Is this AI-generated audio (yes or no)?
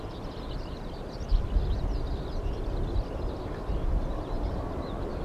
no